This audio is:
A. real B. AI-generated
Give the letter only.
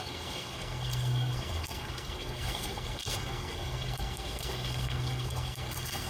B